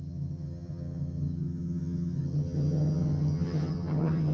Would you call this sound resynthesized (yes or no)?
yes